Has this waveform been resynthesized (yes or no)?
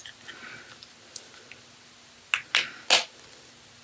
no